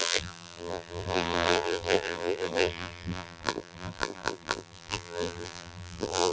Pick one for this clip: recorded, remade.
remade